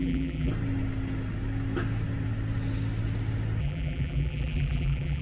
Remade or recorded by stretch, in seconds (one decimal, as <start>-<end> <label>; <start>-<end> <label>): 0.0-0.5 remade; 0.5-3.6 recorded; 3.6-5.2 remade

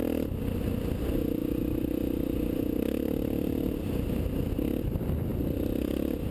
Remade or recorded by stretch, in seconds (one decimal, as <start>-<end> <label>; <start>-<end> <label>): 0.0-6.3 recorded

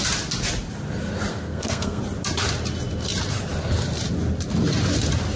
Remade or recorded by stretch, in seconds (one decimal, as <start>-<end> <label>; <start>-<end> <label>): 0.0-1.3 recorded; 1.3-2.0 remade; 2.0-5.4 recorded

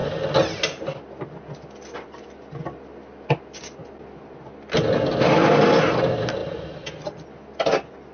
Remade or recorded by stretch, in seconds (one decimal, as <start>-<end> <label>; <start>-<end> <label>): 0.0-8.1 recorded

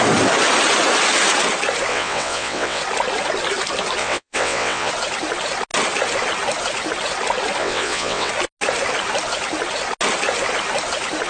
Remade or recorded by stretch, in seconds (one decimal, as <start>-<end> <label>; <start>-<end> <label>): 0.0-1.9 recorded; 1.9-2.8 remade; 2.8-4.0 recorded; 4.0-4.9 remade; 4.9-7.6 recorded; 7.6-8.3 remade; 8.3-11.3 recorded

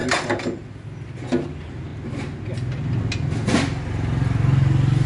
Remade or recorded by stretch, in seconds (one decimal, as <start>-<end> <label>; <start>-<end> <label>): 0.0-5.1 recorded

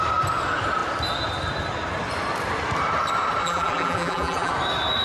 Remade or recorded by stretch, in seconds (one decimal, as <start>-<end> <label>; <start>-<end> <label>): 0.0-3.4 recorded; 3.4-4.5 remade; 4.5-5.0 recorded